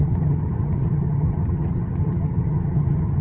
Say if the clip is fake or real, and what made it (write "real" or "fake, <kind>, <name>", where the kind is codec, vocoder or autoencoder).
fake, vocoder, HiFi-GAN